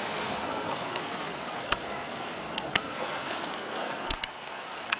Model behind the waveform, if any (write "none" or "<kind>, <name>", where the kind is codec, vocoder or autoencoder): codec, SNAC